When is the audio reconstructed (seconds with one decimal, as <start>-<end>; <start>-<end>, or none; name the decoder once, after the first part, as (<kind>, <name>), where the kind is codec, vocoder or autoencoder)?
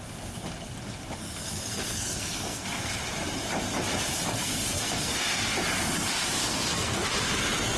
1.4-3.0 (codec, SNAC); 4.3-5.2; 6.4-7.1